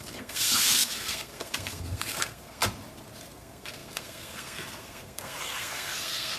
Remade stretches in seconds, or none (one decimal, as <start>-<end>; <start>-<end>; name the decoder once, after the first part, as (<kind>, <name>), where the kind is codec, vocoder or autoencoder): 0.0-2.6 (codec, SNAC); 3.2-6.4